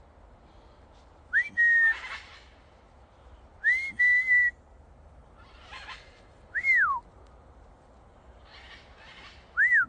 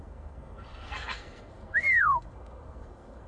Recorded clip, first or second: first